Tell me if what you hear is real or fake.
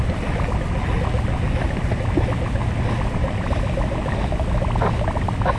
real